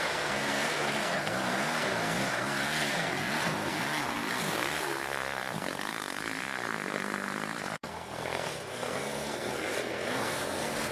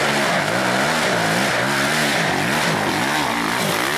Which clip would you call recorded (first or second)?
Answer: second